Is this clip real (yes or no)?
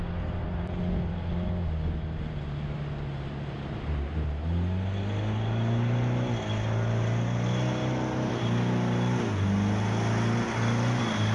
yes